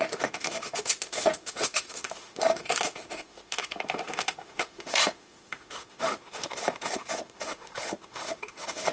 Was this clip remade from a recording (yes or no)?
yes